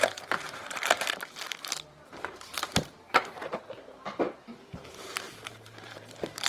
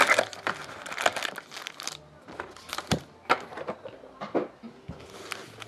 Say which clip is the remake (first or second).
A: first